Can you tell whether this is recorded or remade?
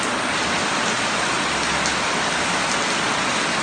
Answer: recorded